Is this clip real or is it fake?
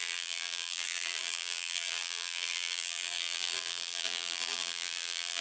fake